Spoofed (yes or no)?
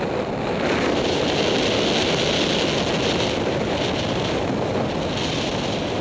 no